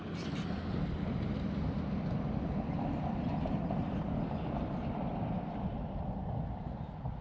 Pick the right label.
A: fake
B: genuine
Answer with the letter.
B